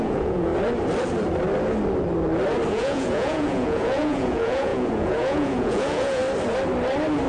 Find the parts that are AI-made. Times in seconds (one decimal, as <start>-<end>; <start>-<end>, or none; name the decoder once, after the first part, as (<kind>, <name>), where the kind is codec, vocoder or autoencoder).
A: 0.0-0.5 (vocoder, Vocos); 2.7-6.2